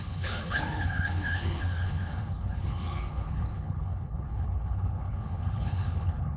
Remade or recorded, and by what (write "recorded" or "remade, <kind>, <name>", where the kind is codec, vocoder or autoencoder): remade, codec, HILCodec